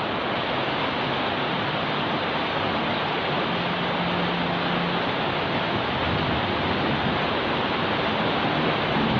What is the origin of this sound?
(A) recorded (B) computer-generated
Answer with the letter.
A